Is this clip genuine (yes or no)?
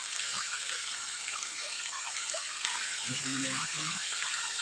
no